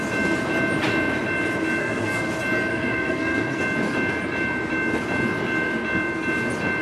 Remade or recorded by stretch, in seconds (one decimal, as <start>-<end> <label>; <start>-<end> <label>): 0.0-1.8 recorded; 1.8-2.3 remade; 2.3-2.7 recorded; 2.7-3.6 remade; 3.6-6.8 recorded